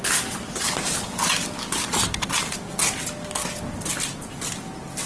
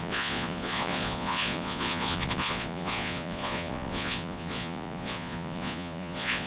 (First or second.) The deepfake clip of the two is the second